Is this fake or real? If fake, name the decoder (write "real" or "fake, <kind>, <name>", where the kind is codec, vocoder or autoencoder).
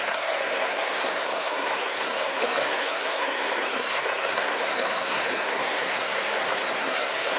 fake, codec, SNAC